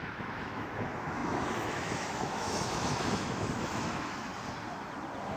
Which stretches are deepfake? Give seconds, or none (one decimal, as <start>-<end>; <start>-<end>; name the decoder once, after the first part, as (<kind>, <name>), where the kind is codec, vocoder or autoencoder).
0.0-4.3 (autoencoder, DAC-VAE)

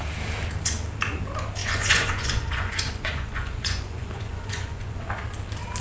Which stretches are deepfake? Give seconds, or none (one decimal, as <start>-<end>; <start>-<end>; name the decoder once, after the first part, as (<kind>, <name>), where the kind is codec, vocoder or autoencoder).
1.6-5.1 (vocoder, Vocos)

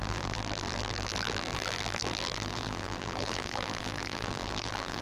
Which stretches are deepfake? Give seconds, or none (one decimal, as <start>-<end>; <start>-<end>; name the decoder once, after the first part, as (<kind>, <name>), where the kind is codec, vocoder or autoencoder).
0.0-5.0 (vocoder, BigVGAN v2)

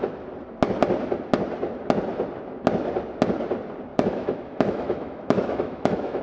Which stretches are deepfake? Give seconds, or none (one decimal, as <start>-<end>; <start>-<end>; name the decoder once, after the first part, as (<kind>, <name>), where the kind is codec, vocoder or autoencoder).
3.9-6.2 (autoencoder, DAC-VAE)

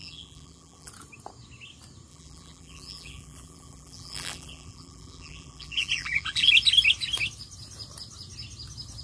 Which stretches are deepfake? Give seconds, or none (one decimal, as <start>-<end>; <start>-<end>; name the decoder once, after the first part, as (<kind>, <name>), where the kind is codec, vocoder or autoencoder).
0.0-0.9 (vocoder, BigVGAN v2); 2.1-6.5